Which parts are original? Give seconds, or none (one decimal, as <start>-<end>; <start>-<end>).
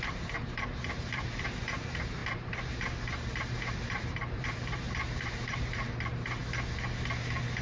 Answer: 6.4-7.6